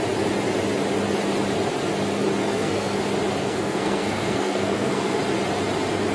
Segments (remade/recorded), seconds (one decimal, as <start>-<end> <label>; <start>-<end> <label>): 0.0-2.4 recorded; 2.4-3.0 remade; 3.0-3.4 recorded; 3.4-5.2 remade; 5.2-6.1 recorded